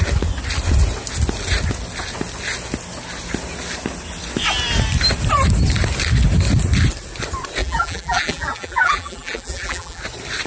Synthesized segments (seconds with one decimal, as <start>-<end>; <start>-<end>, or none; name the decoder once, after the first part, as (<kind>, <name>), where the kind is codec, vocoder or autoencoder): 7.6-10.0 (vocoder, BigVGAN v2)